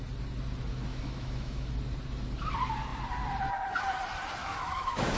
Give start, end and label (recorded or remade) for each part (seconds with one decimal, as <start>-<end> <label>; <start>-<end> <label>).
0.0-0.9 recorded; 0.9-1.7 remade; 1.7-4.4 recorded; 4.4-5.2 remade